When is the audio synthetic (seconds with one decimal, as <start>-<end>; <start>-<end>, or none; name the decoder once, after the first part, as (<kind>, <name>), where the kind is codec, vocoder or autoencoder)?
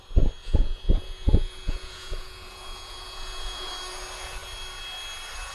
0.4-3.7 (vocoder, Vocos)